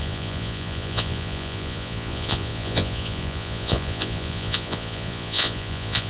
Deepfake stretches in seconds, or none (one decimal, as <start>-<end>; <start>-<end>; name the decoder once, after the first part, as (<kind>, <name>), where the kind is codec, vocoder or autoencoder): 0.0-6.1 (vocoder, Vocos)